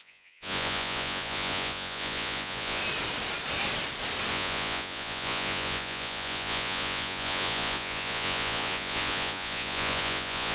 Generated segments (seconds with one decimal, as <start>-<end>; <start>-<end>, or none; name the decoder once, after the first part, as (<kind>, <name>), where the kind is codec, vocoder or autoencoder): 0.0-2.8 (vocoder, Vocos); 4.3-10.5